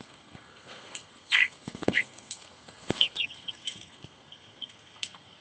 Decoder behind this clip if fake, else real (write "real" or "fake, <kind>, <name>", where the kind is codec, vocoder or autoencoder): fake, codec, SNAC